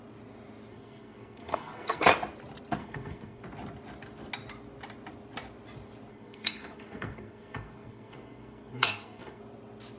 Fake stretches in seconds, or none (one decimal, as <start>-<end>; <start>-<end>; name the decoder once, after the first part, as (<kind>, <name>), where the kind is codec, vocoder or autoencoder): 0.7-2.1 (codec, SNAC); 2.8-3.4; 6.1-9.4